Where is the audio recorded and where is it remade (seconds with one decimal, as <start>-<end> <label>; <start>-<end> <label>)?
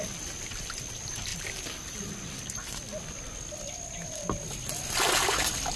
0.0-5.8 recorded